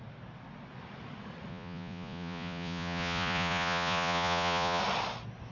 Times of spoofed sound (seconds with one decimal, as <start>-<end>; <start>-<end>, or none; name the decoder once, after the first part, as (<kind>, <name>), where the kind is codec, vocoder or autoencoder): 1.5-4.8 (vocoder, Vocos)